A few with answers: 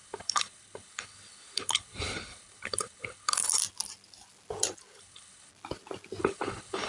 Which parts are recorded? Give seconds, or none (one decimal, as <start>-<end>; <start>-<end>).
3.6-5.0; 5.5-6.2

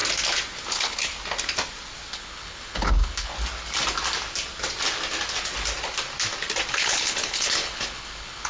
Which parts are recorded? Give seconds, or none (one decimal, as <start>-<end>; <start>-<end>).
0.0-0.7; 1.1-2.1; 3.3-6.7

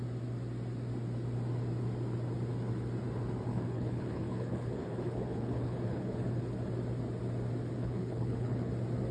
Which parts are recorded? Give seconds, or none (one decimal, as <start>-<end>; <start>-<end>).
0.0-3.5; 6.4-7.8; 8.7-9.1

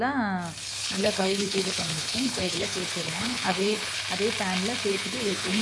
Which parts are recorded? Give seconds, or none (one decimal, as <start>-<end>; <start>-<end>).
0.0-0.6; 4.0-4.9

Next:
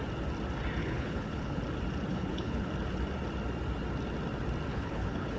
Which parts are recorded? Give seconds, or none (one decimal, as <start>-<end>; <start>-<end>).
0.0-0.8; 1.6-2.1; 2.7-4.7